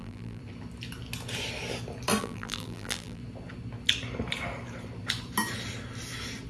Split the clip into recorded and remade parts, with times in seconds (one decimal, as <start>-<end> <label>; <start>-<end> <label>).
0.0-0.4 remade; 0.4-2.2 recorded; 2.2-3.2 remade; 3.2-6.5 recorded